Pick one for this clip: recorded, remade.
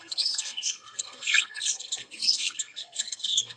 remade